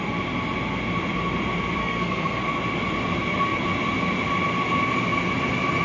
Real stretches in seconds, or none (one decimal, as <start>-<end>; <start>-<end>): 0.0-1.8; 2.4-5.8